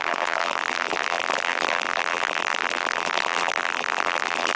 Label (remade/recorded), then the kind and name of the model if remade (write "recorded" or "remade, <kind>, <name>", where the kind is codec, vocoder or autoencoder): remade, vocoder, BigVGAN v2